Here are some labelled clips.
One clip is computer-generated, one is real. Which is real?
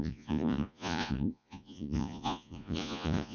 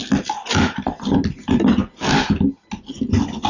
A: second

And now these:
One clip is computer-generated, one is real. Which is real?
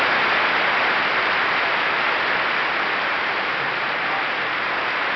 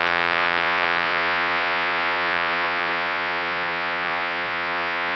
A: first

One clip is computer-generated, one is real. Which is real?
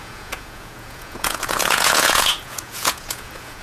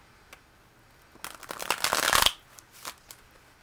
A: second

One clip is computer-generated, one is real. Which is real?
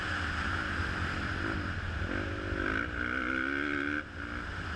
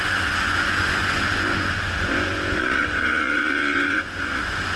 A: first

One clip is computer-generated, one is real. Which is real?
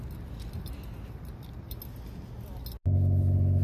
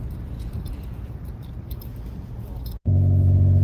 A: first